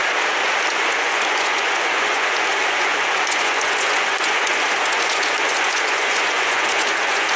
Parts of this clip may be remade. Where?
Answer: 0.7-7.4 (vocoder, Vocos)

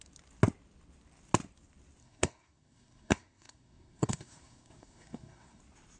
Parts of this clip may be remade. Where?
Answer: 2.0-5.6 (codec, SNAC)